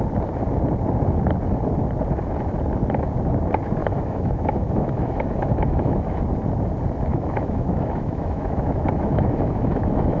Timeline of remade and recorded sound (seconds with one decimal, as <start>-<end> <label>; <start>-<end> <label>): 0.0-3.8 recorded; 3.8-6.2 remade; 6.2-7.1 recorded; 7.1-10.2 remade